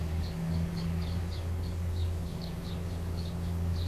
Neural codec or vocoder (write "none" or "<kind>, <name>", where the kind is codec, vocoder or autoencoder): codec, DAC